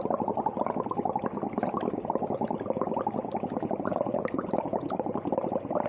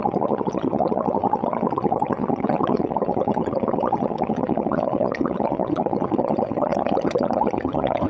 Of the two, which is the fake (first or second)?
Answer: second